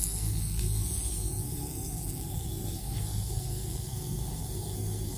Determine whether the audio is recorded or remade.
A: remade